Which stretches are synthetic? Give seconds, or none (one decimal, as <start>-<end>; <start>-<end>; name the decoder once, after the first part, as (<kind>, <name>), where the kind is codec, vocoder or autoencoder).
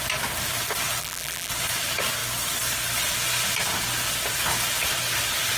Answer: 1.0-1.5 (vocoder, BigVGAN v2)